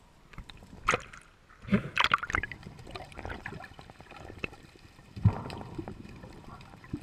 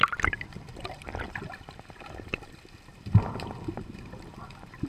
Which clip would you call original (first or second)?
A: second